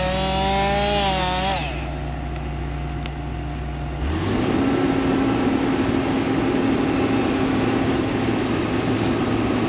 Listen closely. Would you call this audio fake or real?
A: real